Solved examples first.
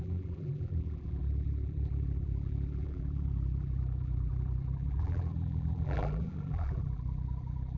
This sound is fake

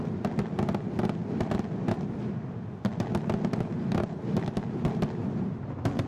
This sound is real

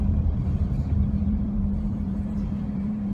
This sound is fake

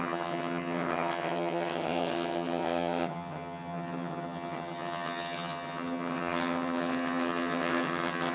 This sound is fake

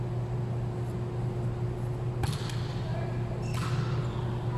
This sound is real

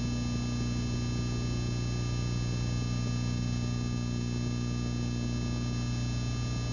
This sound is real